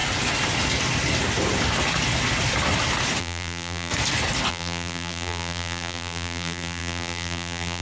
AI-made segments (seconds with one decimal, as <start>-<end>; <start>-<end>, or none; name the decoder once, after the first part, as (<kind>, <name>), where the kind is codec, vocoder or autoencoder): 3.2-3.9 (vocoder, BigVGAN v2); 4.5-7.8